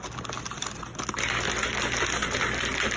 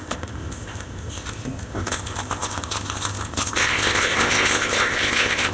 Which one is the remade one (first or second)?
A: second